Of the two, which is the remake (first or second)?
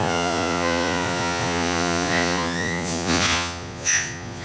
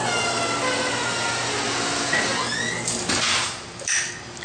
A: first